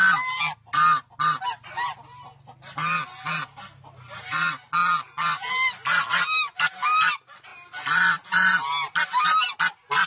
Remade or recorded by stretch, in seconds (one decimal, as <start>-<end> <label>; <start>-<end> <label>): 0.0-10.1 recorded